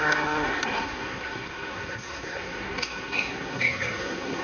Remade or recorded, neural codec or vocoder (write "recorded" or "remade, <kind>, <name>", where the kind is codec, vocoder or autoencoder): remade, codec, SNAC